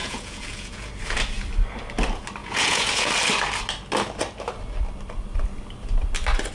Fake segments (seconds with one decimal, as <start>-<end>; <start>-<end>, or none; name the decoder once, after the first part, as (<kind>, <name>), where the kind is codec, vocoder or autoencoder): 0.0-0.9 (vocoder, Vocos); 2.4-3.1